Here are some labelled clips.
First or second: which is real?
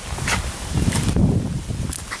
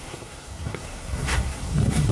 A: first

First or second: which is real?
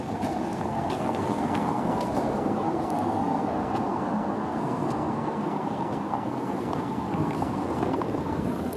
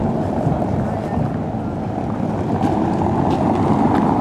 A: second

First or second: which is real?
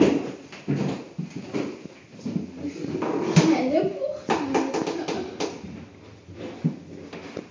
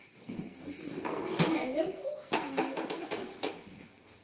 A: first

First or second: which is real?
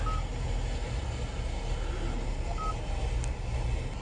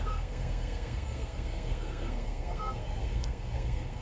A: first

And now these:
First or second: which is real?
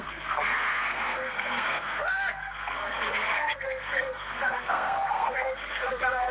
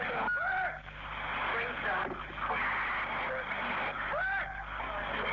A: second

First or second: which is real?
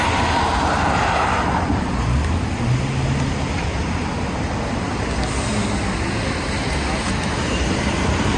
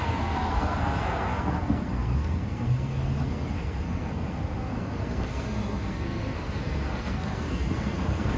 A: first